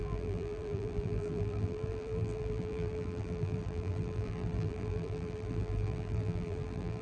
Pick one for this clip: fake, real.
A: fake